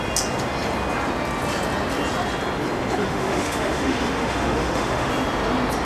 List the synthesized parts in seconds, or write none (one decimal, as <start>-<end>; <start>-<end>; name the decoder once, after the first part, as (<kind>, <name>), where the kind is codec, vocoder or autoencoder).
3.0-5.1 (autoencoder, DAC-VAE)